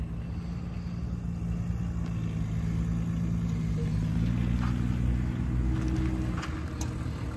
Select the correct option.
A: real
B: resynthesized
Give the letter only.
A